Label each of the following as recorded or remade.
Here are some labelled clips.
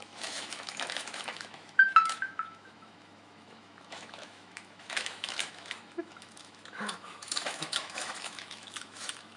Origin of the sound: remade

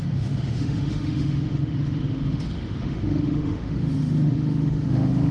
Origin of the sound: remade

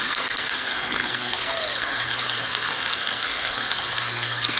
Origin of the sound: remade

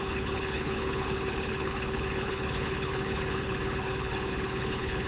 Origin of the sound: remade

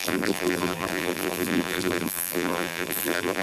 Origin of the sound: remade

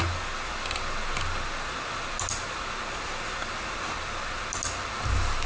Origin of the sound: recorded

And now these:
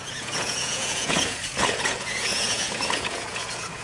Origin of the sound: remade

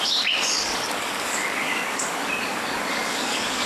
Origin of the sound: remade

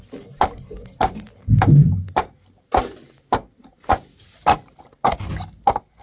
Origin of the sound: recorded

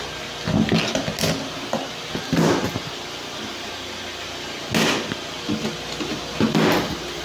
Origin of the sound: recorded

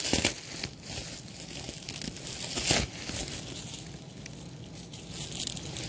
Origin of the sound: recorded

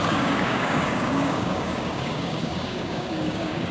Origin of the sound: remade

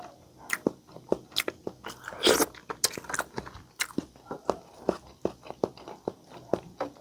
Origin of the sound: recorded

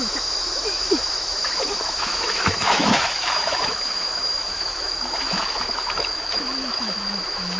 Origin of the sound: remade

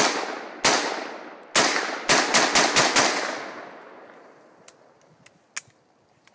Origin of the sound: recorded